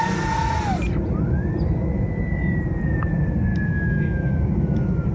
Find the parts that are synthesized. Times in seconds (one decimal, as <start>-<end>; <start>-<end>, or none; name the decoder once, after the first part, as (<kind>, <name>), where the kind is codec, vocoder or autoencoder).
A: 3.5-5.1 (autoencoder, DAC-VAE)